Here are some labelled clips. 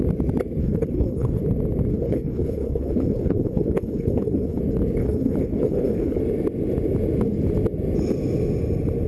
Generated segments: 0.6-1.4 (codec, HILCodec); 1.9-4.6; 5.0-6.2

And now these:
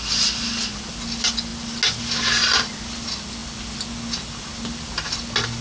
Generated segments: none

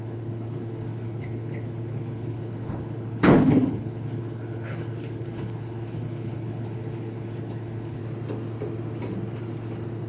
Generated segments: 0.0-8.0 (codec, HILCodec)

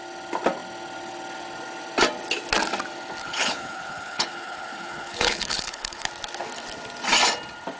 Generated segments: 3.2-6.1 (codec, HILCodec)